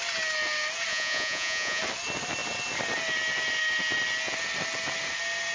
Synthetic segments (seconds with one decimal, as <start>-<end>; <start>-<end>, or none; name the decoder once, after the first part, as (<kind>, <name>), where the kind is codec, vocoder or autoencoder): 0.9-1.8 (vocoder, Vocos)